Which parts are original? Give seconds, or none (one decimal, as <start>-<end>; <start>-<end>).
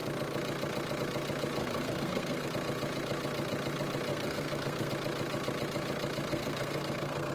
0.0-1.6; 2.5-4.1; 4.9-6.3